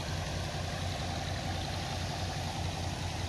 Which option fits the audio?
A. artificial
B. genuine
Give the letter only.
B